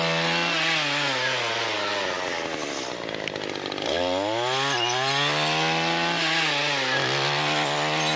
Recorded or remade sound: recorded